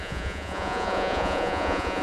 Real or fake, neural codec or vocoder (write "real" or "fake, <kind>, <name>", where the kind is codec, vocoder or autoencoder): fake, vocoder, Vocos